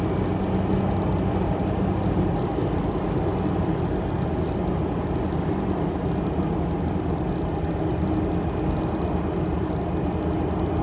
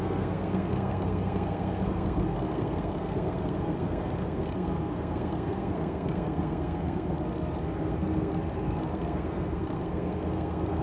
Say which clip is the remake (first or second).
second